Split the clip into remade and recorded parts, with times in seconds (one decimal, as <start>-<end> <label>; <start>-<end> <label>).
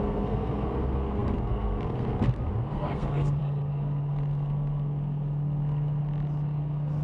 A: 0.0-6.0 remade; 6.0-6.6 recorded; 6.6-7.0 remade